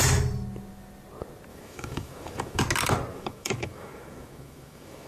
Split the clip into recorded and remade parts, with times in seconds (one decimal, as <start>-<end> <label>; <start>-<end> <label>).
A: 0.0-1.5 recorded; 1.5-2.6 remade; 2.6-3.1 recorded; 3.1-5.1 remade